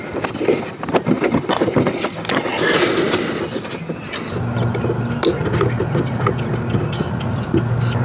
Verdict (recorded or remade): recorded